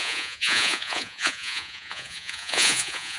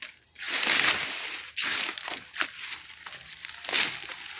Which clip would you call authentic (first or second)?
second